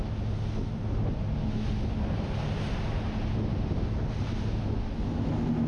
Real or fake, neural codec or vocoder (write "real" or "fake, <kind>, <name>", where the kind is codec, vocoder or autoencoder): real